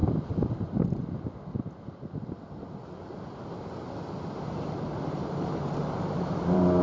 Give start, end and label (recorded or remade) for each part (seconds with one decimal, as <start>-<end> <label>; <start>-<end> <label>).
0.0-2.4 recorded; 2.4-2.8 remade; 2.8-4.5 recorded; 4.5-6.8 remade